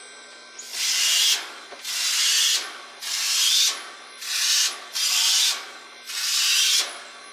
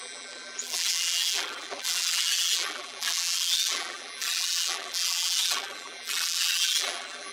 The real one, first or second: first